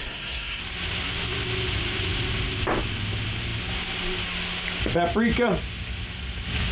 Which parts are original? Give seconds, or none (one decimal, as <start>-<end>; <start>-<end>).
0.6-6.7